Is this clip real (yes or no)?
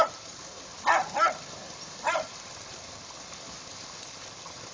yes